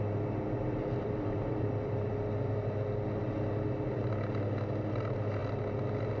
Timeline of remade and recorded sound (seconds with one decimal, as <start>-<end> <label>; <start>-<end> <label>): 0.0-0.6 recorded; 0.6-2.1 remade; 2.1-6.2 recorded